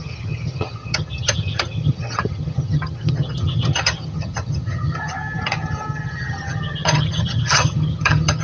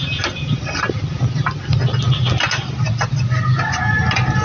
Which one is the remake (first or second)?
first